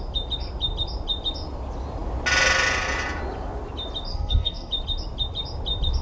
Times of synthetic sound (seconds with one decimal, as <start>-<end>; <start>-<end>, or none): 4.1-4.7